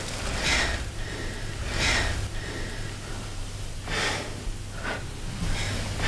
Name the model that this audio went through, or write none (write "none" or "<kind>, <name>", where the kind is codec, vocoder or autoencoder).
none